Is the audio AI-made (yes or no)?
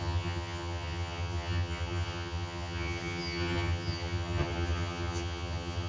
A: yes